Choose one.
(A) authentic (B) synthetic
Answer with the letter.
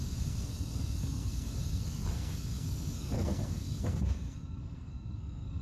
B